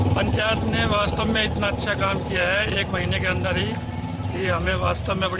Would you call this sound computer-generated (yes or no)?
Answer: yes